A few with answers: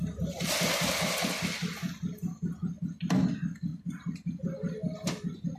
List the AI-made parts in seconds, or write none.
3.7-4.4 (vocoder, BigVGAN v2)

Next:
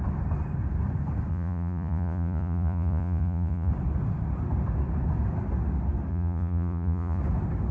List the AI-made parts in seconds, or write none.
1.3-3.7 (vocoder, Vocos); 6.1-7.2

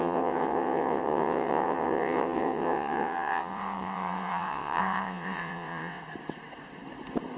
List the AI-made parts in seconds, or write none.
0.0-6.0 (vocoder, WaveNeXt)

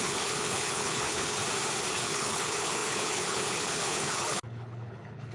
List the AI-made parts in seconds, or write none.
0.0-1.4 (codec, HILCodec); 1.9-5.3

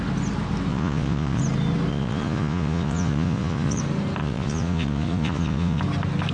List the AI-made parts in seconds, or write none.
0.7-1.4 (vocoder, Vocos); 1.9-3.8; 4.2-5.8